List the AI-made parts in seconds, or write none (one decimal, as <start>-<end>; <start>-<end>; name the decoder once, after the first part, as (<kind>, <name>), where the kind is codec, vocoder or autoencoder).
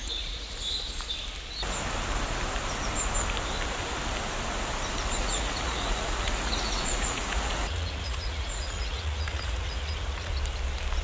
0.0-0.5 (vocoder, Vocos); 5.2-10.3